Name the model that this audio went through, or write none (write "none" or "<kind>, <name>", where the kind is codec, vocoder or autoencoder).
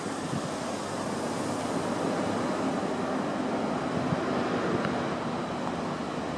none